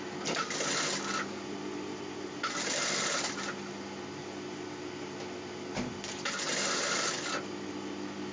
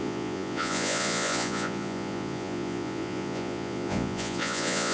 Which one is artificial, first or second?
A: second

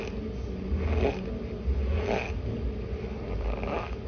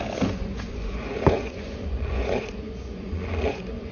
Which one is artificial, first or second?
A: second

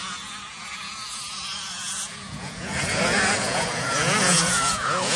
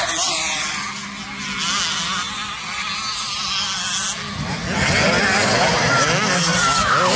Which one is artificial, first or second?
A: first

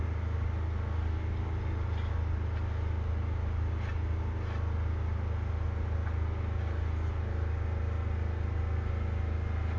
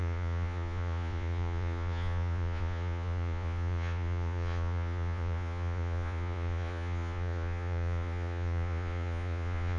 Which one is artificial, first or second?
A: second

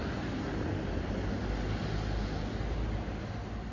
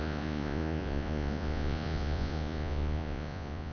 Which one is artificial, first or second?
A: second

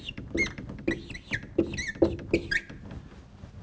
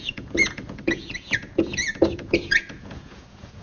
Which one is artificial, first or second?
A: second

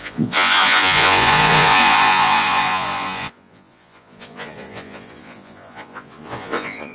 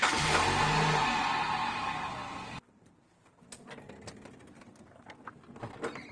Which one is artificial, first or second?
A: first